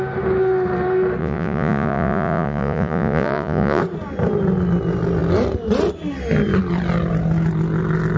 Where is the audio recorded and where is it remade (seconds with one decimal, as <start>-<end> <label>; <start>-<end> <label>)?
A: 0.0-1.2 recorded; 1.2-3.8 remade; 3.8-8.2 recorded